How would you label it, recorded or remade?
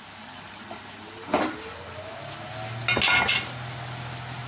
recorded